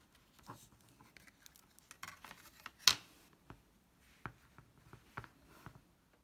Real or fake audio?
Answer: real